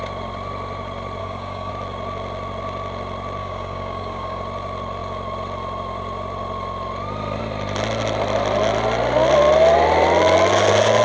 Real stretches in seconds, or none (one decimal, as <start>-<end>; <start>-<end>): 0.0-1.2; 1.7-3.4; 4.4-11.0